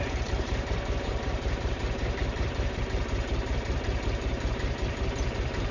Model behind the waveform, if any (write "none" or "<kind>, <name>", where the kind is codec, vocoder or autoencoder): vocoder, BigVGAN v2